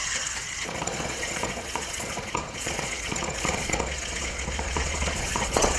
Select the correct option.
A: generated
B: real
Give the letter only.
A